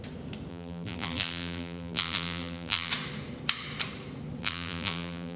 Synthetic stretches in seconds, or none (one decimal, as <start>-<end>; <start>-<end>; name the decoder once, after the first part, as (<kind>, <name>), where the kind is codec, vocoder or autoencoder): 0.5-2.9 (vocoder, BigVGAN v2); 4.4-5.4